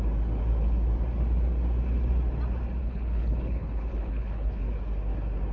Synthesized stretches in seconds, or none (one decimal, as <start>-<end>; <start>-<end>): 2.8-4.6